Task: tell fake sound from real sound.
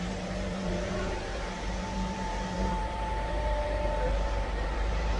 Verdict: fake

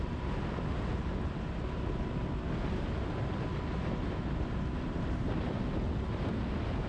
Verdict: real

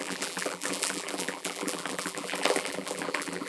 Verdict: fake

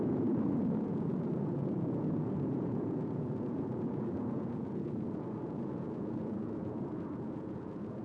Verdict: fake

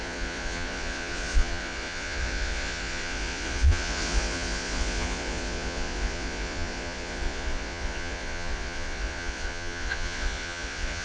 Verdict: fake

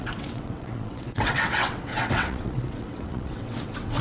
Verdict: fake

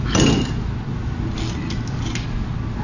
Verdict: real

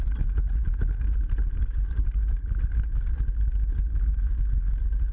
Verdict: real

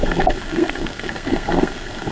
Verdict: fake